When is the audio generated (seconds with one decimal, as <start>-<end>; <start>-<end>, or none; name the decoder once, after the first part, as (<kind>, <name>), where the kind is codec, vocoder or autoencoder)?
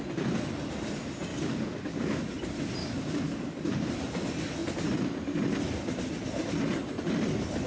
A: 1.3-2.2 (codec, DAC); 2.8-3.9